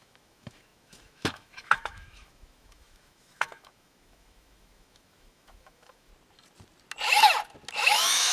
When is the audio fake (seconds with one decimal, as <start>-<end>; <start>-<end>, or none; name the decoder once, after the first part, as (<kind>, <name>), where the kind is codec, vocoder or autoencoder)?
0.0-6.1 (autoencoder, DAC-VAE); 7.7-8.3